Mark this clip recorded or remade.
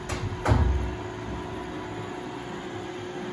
recorded